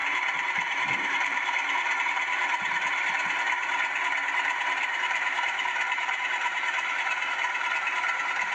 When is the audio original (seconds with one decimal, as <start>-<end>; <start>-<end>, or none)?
2.0-4.8; 7.7-8.5